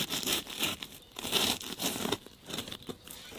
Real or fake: fake